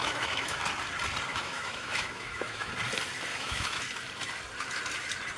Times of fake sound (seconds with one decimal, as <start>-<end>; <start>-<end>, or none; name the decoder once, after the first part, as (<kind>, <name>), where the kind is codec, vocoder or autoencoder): 0.0-0.6 (autoencoder, DAC-VAE); 1.3-2.7; 3.3-3.8